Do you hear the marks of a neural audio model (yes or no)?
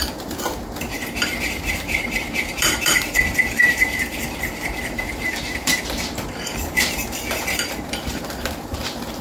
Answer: yes